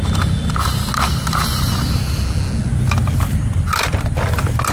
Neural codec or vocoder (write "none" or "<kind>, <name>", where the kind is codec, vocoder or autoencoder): none